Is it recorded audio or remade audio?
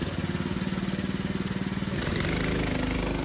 recorded